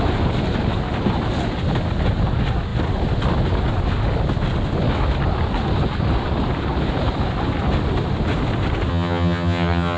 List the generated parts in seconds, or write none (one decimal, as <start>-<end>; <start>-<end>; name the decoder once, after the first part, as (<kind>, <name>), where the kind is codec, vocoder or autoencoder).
8.9-10.0 (vocoder, HiFi-GAN)